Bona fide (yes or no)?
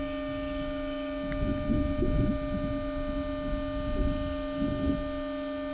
yes